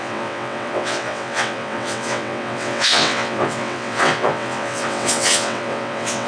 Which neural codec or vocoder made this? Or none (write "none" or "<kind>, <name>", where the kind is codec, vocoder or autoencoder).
vocoder, WaveNeXt